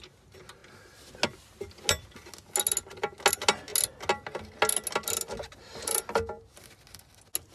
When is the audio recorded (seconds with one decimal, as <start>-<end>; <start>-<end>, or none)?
0.0-7.5